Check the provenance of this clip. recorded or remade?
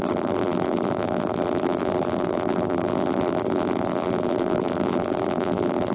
remade